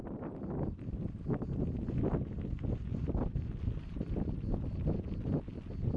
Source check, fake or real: real